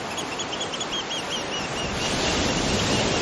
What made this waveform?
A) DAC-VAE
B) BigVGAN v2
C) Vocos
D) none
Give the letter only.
D